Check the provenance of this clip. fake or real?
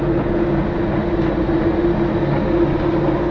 real